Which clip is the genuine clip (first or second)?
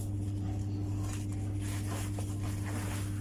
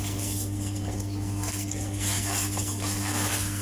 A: first